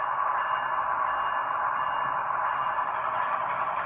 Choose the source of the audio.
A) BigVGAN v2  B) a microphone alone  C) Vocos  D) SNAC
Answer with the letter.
B